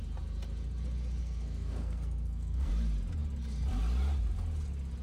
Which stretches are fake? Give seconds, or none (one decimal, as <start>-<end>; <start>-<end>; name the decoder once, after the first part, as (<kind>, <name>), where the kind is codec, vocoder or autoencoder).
1.2-2.7 (codec, SNAC)